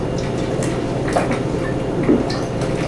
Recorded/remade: recorded